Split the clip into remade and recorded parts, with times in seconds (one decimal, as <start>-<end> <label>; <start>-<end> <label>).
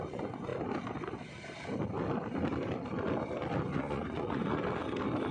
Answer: 0.0-0.5 remade; 0.5-3.7 recorded; 3.7-4.6 remade; 4.6-5.3 recorded